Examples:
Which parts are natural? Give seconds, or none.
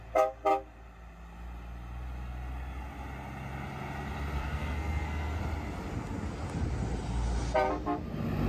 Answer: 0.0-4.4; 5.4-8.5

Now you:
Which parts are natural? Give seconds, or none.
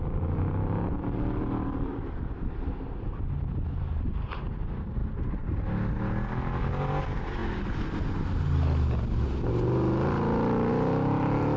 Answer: 5.0-7.0; 7.4-10.7